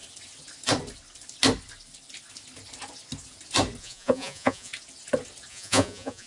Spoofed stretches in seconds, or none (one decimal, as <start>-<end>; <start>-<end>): 3.8-4.7; 5.5-6.3